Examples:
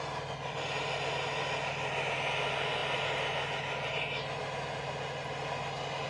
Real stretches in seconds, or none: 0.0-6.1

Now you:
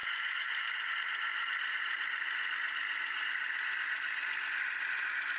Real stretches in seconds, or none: 0.9-5.4

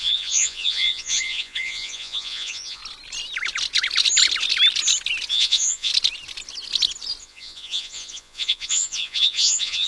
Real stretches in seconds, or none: 2.8-5.3; 5.9-7.2

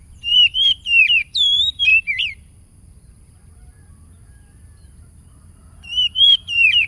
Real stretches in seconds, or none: none

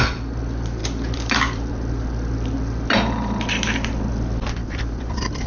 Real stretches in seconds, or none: 0.0-0.8; 4.1-4.6